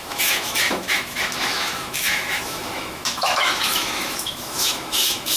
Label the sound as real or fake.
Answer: fake